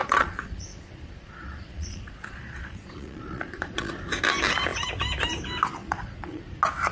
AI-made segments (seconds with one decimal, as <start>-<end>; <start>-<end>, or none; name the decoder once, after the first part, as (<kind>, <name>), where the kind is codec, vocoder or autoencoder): 0.0-3.9 (vocoder, Vocos); 5.8-6.5